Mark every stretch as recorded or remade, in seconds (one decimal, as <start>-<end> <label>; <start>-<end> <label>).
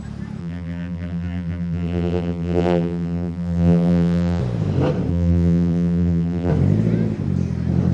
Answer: 0.0-0.4 recorded; 0.4-4.4 remade; 4.4-5.1 recorded; 5.1-6.5 remade; 6.5-7.9 recorded